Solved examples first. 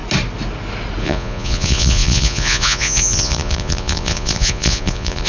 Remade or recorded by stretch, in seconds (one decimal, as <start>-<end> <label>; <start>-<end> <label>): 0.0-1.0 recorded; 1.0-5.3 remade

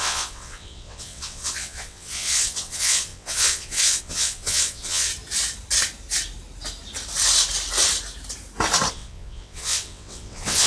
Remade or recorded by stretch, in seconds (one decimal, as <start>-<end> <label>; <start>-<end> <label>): 0.0-5.1 remade; 5.1-8.9 recorded; 8.9-10.7 remade

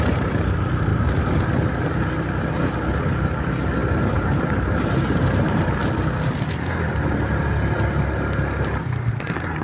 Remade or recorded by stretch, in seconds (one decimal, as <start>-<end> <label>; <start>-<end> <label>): 0.0-3.8 recorded; 3.8-5.8 remade; 5.8-9.6 recorded